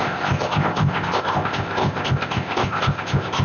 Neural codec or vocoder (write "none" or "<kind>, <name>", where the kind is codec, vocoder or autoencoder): codec, ZipCodec